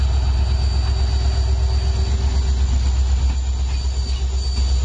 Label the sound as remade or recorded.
recorded